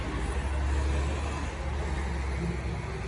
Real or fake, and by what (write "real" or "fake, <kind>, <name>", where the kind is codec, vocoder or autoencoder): real